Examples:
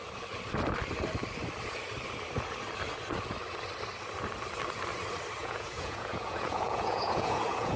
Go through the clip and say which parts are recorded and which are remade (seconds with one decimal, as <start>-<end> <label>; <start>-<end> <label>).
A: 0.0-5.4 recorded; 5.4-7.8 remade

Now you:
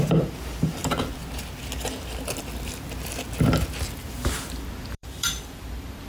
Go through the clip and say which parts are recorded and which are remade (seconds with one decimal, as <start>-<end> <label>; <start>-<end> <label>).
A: 0.0-0.8 remade; 0.8-3.9 recorded; 3.9-6.1 remade

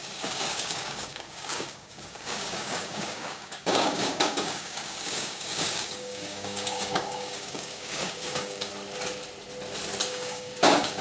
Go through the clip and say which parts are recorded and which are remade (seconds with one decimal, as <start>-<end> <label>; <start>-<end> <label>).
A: 0.0-8.7 remade; 8.7-10.1 recorded; 10.1-11.0 remade